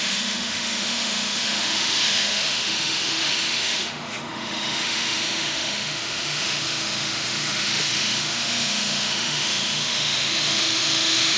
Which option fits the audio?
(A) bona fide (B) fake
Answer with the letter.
B